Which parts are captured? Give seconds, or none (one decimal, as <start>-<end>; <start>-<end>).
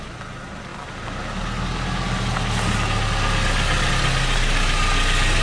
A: 0.0-5.4